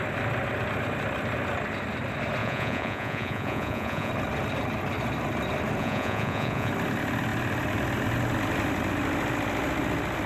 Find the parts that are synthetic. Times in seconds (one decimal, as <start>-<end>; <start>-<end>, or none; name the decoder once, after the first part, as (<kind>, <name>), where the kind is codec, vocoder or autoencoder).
2.4-4.1 (vocoder, Vocos); 5.8-6.7